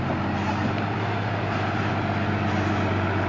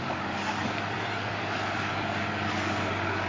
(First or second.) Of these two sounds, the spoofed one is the second